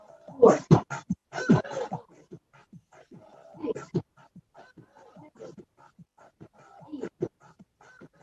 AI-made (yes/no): no